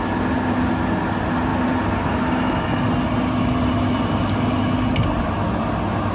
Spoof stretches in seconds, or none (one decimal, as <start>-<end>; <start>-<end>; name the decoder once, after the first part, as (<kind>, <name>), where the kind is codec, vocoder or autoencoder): none